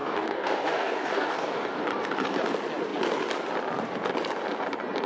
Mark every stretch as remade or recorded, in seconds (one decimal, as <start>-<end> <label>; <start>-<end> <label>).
0.0-1.8 remade; 1.8-5.1 recorded